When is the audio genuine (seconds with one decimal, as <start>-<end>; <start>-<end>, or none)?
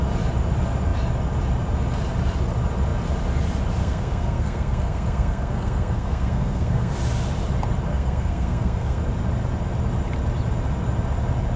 0.0-3.8; 6.9-7.9; 9.0-11.6